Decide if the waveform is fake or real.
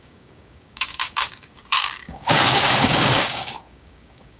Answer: fake